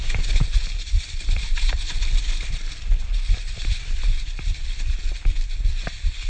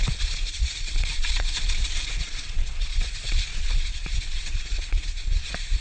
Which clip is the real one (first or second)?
first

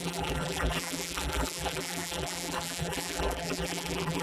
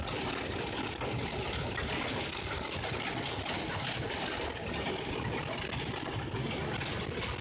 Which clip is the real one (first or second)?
second